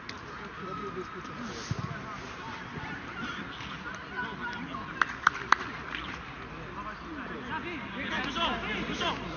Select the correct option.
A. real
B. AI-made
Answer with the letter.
A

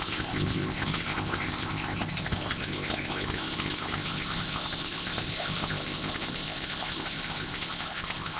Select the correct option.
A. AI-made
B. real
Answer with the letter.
A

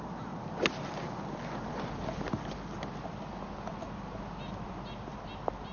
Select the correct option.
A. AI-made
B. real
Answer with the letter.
B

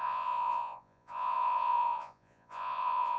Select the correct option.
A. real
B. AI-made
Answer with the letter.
B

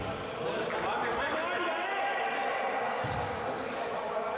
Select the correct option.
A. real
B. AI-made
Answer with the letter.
A